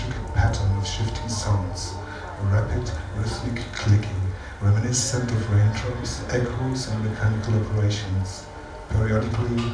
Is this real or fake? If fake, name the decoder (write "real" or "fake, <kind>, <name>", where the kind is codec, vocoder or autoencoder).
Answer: real